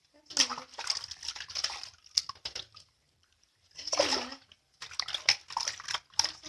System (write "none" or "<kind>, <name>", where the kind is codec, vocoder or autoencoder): none